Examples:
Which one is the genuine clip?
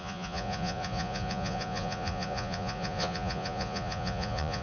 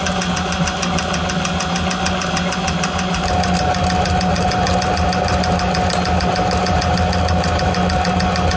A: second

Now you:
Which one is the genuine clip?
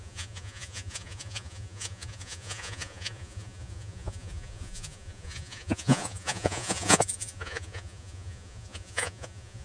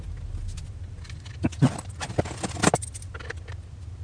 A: second